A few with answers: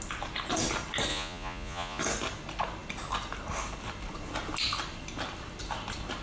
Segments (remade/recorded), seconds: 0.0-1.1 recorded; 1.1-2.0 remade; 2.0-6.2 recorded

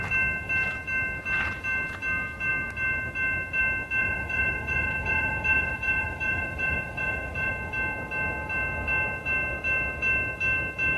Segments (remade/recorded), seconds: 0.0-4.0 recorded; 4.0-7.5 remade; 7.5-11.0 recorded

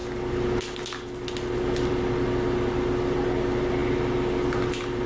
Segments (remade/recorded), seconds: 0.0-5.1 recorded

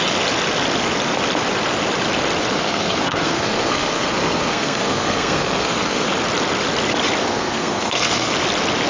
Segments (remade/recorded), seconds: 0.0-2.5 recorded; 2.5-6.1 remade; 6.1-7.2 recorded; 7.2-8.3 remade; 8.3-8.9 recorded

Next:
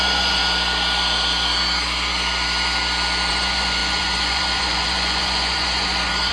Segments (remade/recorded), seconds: 0.0-0.4 remade; 0.4-3.3 recorded; 3.3-6.3 remade

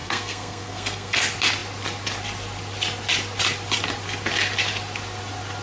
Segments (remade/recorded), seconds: 0.0-1.2 remade; 1.2-5.6 recorded

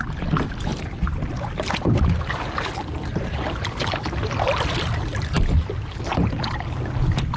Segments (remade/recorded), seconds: 0.0-3.1 recorded; 3.1-3.6 remade; 3.6-7.4 recorded